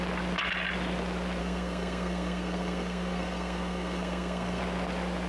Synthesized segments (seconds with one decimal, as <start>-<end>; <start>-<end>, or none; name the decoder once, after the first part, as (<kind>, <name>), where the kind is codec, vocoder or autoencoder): 1.4-4.6 (codec, SNAC)